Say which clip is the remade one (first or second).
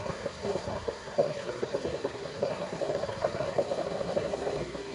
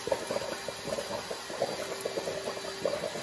first